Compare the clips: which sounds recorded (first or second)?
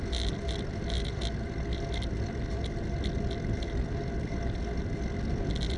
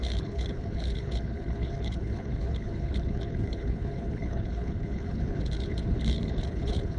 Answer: first